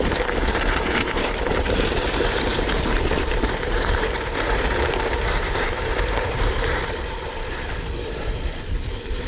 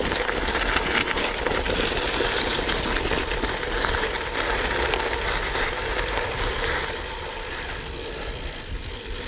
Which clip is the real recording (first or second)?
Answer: second